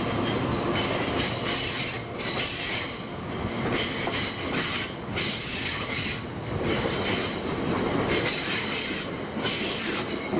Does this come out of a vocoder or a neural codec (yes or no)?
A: no